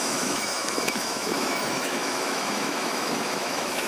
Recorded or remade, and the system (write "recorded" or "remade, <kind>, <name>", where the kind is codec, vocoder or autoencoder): remade, autoencoder, DAC-VAE